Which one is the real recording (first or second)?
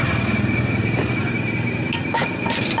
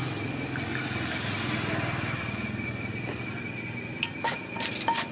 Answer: second